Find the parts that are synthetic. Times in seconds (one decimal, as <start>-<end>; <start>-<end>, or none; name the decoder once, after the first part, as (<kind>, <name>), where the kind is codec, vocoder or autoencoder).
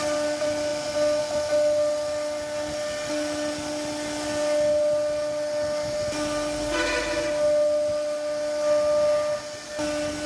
none